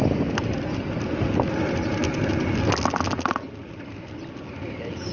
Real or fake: real